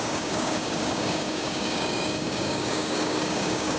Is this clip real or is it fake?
fake